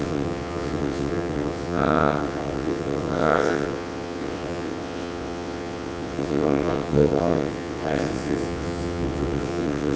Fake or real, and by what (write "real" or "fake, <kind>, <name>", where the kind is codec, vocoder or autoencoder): fake, vocoder, WaveNeXt